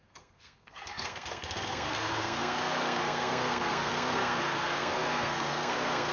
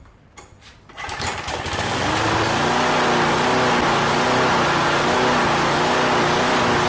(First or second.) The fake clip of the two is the first